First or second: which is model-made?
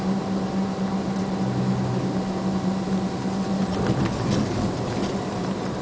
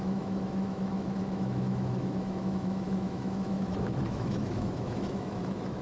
second